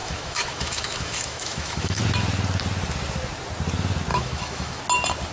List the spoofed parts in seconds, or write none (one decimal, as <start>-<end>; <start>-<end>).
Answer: 0.0-2.0; 4.1-4.8